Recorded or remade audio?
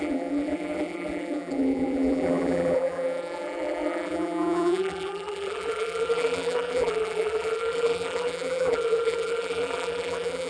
remade